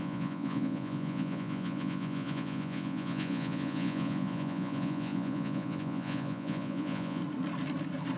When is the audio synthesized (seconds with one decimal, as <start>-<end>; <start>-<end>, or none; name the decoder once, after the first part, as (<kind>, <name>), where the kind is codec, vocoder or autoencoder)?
0.0-7.2 (vocoder, Vocos)